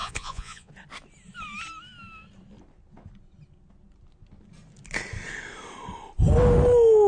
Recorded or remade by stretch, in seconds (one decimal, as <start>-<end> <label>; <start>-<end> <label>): 0.0-0.7 remade; 0.7-7.1 recorded